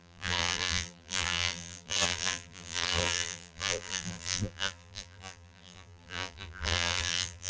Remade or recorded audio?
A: remade